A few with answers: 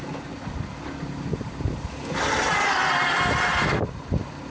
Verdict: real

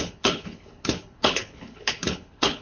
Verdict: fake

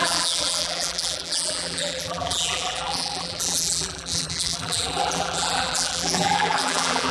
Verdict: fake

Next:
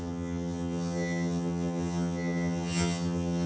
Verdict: fake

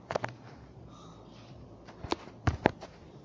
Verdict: real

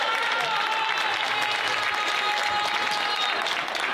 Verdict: real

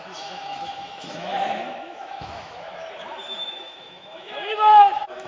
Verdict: fake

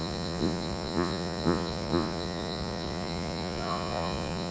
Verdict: fake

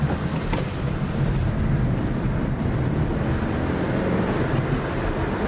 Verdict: fake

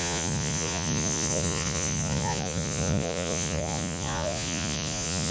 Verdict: fake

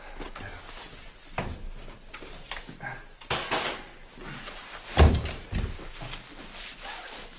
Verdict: real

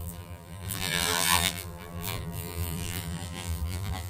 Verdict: fake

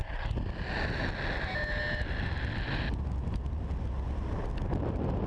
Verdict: real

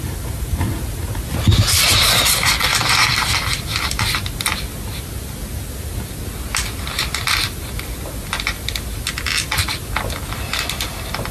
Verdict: real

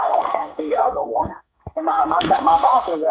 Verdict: fake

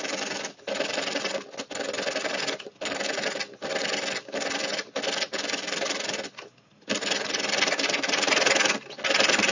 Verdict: real